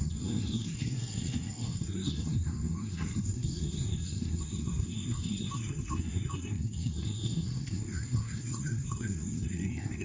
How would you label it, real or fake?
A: fake